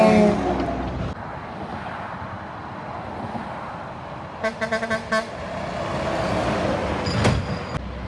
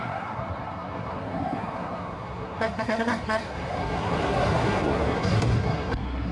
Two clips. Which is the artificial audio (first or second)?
second